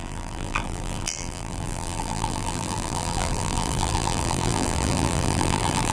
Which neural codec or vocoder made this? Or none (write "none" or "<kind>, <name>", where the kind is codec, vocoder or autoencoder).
vocoder, BigVGAN v2